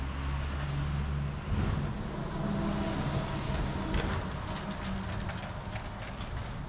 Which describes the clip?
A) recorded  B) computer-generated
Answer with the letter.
A